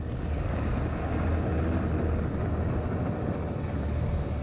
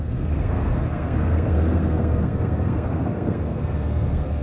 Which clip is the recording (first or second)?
first